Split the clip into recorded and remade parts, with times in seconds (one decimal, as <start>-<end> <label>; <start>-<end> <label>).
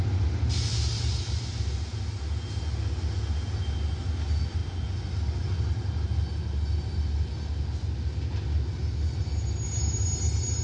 0.0-10.6 recorded